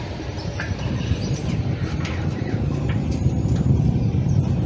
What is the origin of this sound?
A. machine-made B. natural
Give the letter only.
A